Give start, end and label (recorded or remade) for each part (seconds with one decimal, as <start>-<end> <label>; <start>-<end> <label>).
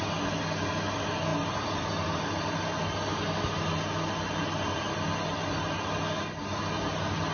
0.0-1.3 recorded; 1.3-2.6 remade; 2.6-7.3 recorded